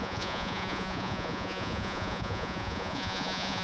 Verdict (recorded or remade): remade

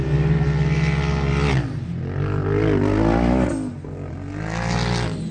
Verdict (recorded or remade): recorded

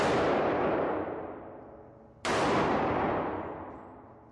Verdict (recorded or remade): recorded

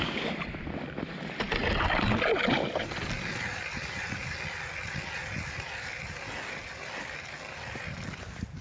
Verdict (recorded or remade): recorded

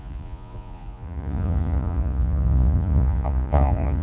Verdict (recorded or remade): remade